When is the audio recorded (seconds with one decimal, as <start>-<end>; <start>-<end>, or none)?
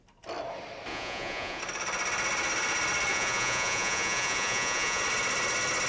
0.0-0.9; 1.6-3.1; 5.0-5.9